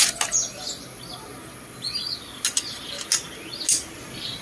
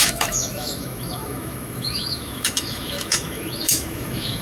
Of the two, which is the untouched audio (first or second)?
first